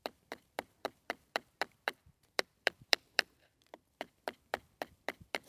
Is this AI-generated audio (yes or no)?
yes